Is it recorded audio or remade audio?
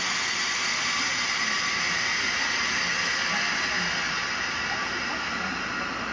recorded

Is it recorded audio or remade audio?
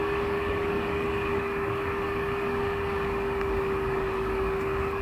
remade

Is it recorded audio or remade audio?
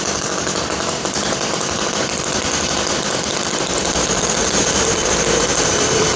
remade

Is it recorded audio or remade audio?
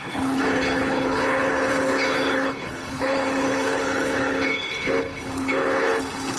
remade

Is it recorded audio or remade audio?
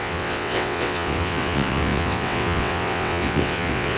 remade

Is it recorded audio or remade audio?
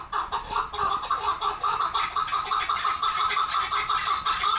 recorded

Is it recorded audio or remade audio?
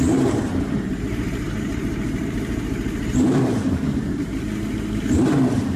remade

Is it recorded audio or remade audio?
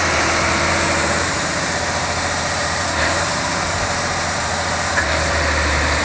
remade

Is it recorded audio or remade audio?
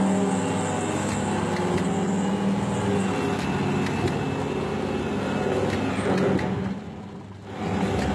recorded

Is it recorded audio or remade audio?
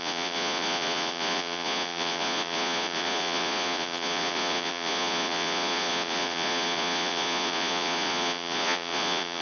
remade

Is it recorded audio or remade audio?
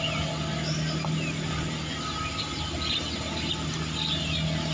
recorded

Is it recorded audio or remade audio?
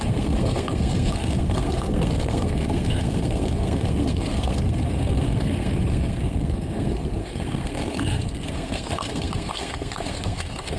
remade